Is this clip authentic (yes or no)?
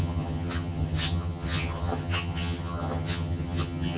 no